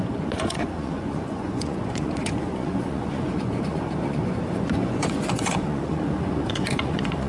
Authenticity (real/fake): fake